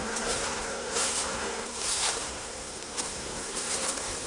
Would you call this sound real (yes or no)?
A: no